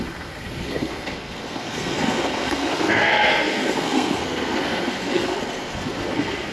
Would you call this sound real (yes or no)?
no